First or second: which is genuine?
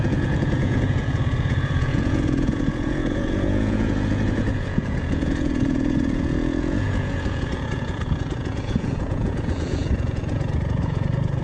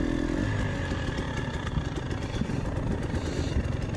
second